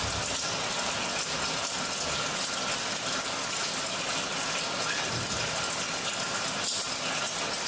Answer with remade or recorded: recorded